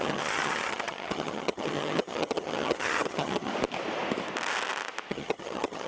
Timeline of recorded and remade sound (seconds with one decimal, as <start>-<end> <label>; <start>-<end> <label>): 0.0-3.5 remade; 3.5-5.1 recorded; 5.1-5.9 remade